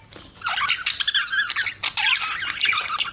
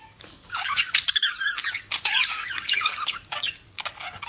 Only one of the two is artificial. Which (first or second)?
second